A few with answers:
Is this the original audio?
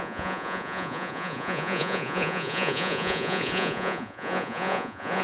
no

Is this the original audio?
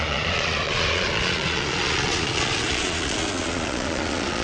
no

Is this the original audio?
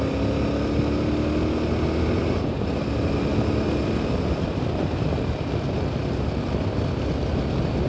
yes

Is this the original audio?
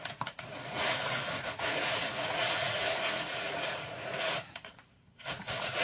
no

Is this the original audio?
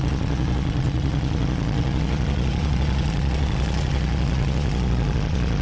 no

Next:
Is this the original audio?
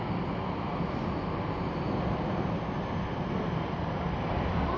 yes